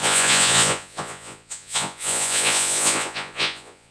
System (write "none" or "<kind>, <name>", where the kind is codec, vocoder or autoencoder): vocoder, Vocos